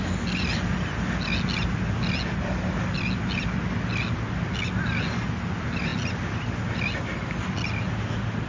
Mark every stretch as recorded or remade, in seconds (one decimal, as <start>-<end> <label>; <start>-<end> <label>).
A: 0.0-8.5 recorded